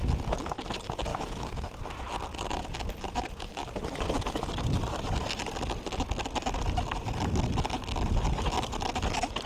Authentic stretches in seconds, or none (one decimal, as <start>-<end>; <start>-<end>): 0.0-1.1; 1.8-9.5